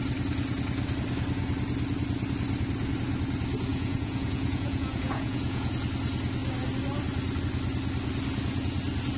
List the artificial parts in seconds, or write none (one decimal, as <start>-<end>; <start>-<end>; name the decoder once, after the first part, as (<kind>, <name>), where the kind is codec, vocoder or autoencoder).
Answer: 3.7-5.7 (vocoder, Vocos)